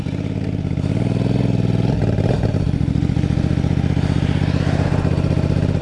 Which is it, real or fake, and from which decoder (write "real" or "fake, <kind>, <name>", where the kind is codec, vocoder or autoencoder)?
real